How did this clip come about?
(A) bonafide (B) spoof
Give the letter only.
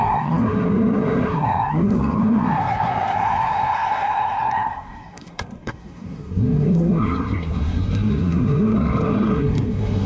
B